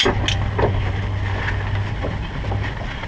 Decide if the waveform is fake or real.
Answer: real